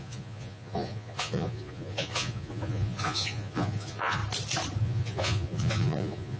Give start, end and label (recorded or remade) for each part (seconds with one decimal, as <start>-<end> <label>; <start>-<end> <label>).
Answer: 0.0-4.2 remade; 4.2-4.8 recorded; 4.8-6.4 remade